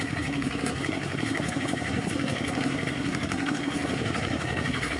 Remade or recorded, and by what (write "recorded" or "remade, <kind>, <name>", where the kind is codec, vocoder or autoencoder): remade, codec, SNAC